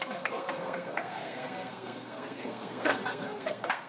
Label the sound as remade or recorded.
remade